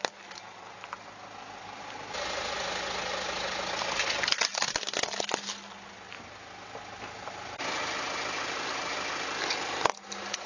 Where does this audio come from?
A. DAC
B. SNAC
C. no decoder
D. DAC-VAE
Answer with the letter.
C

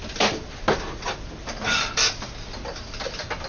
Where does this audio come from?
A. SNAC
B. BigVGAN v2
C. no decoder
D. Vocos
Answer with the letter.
C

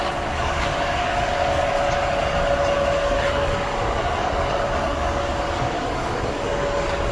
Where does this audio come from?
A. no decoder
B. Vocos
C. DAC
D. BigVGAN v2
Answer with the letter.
C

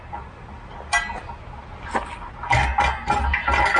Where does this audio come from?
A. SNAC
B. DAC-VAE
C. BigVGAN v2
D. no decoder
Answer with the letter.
D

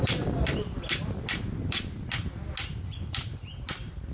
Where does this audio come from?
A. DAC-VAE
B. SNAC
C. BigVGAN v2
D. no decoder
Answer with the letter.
D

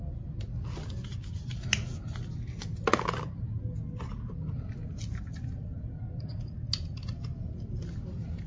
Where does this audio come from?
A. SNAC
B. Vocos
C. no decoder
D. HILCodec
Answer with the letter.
C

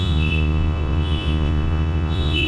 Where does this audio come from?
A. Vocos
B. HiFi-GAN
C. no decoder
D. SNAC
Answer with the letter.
A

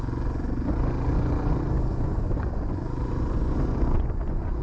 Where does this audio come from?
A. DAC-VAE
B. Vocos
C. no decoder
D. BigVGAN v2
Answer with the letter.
B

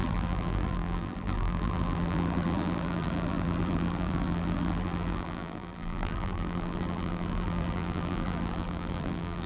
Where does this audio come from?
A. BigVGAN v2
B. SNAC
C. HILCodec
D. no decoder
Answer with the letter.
A